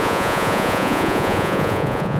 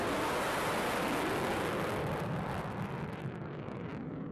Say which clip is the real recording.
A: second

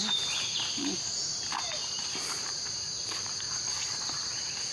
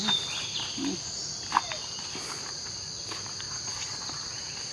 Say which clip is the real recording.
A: second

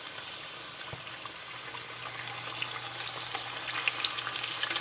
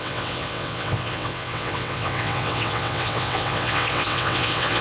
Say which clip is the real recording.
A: first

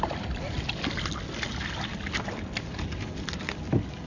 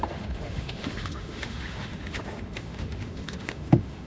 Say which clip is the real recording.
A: first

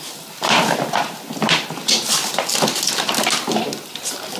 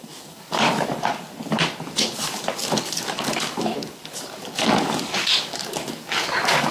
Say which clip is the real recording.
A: first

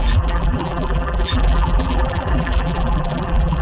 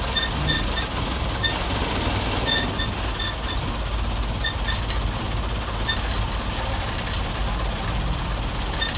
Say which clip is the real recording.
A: second